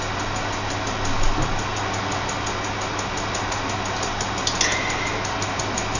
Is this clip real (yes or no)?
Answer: yes